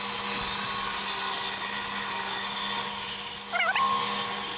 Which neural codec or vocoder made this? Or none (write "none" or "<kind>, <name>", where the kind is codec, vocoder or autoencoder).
none